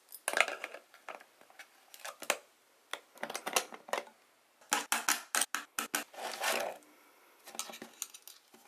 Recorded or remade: recorded